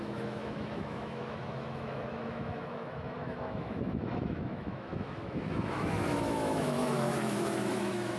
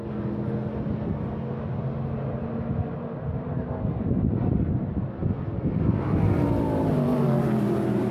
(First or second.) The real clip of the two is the second